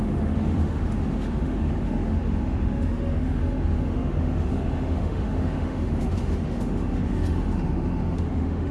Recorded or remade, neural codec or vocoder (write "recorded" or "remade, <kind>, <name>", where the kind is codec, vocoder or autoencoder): remade, autoencoder, DAC-VAE